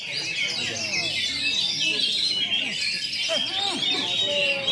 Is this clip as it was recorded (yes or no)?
yes